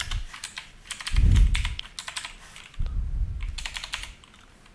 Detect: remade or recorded recorded